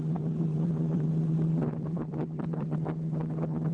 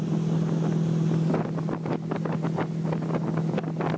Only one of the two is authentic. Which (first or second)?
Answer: second